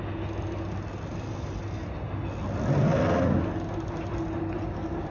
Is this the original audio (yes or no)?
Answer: yes